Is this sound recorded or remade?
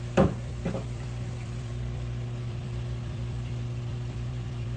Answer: remade